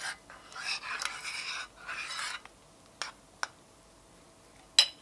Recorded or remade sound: recorded